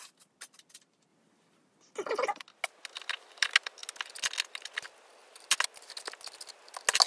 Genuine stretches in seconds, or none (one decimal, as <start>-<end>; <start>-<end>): 0.0-7.1